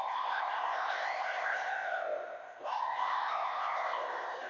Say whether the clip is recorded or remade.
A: remade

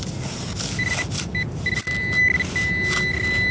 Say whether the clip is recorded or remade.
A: recorded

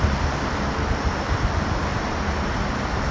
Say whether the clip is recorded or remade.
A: recorded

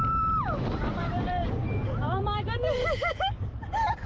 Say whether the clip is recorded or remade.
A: recorded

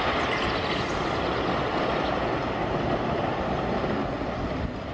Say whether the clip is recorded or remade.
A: recorded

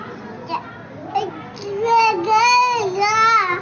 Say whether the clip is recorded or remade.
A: recorded